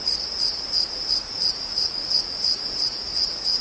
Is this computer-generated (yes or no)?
yes